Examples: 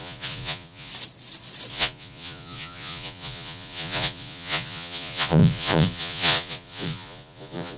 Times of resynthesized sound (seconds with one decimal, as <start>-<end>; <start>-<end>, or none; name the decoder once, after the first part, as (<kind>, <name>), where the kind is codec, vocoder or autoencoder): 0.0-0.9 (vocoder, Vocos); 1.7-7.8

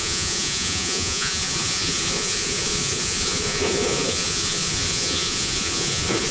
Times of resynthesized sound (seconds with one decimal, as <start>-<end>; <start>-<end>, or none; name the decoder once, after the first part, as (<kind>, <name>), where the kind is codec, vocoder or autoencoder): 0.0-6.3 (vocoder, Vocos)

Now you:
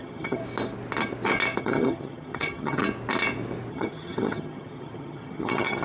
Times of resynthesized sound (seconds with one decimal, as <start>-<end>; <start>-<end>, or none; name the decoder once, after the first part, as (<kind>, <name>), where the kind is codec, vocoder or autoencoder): 0.0-0.4 (vocoder, HiFi-GAN); 1.6-2.8; 3.7-5.8

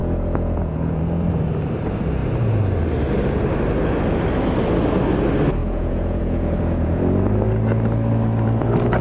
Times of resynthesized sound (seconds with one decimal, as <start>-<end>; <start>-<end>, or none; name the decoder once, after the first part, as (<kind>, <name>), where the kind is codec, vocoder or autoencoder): 0.0-1.0 (vocoder, Vocos); 5.6-7.0

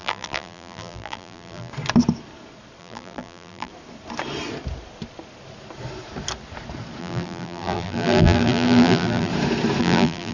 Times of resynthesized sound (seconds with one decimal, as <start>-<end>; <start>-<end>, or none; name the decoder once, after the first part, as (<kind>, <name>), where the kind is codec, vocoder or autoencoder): 0.0-1.7 (vocoder, BigVGAN v2); 2.8-3.7; 7.0-9.3; 9.8-10.3